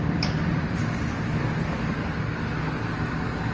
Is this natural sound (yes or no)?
yes